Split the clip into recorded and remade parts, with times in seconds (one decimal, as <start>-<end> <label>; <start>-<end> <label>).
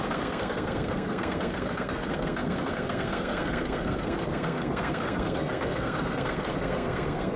0.0-7.4 remade